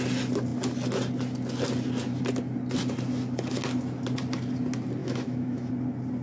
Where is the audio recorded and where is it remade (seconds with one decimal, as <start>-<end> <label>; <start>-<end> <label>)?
0.0-5.0 recorded; 5.0-5.7 remade; 5.7-6.2 recorded